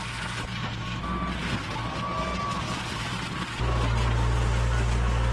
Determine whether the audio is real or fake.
real